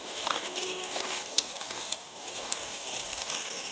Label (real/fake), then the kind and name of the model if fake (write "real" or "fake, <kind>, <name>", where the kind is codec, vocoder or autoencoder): fake, codec, DAC